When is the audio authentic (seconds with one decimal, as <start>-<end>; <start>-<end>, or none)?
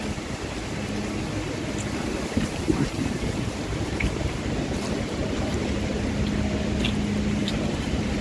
0.0-2.7; 5.9-7.4